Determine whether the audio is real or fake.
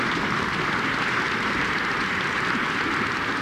fake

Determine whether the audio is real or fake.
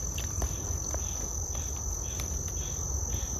real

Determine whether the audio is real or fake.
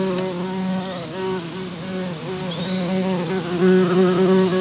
real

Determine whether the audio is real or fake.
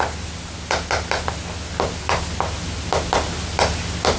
real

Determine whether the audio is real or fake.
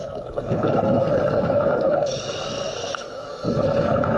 fake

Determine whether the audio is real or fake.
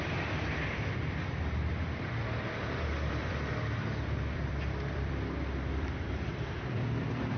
fake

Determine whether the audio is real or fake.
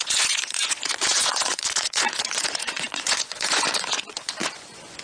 fake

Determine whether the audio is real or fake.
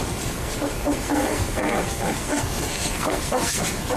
fake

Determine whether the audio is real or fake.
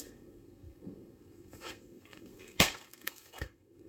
fake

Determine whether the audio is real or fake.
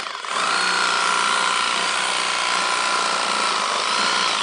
real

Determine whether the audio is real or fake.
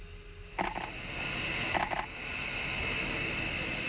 real